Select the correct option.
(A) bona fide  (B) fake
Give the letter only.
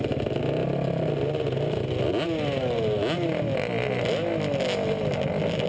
A